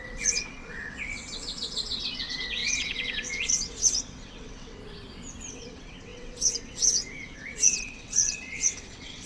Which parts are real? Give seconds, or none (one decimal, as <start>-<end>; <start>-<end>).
4.8-5.5